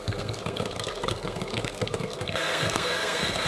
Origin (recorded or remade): remade